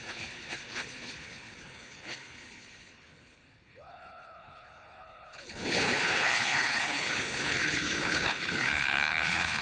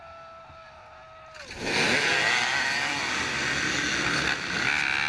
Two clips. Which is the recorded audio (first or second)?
second